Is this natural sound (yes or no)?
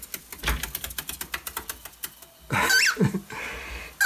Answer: yes